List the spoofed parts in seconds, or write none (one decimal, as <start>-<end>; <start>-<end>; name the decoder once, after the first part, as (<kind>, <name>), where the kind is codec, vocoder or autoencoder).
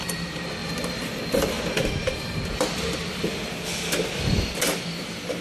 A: 0.6-1.6 (vocoder, BigVGAN v2)